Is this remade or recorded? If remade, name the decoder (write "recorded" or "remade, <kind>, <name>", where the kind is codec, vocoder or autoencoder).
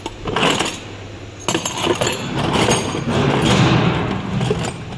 recorded